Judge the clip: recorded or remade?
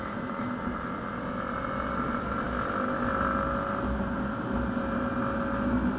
recorded